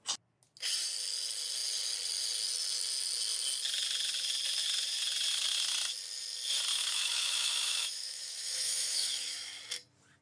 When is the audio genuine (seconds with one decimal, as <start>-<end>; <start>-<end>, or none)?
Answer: 0.0-6.7; 9.7-10.2